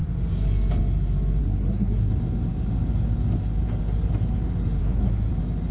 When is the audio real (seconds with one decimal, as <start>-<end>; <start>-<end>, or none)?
0.0-1.4; 2.1-4.8; 5.3-5.7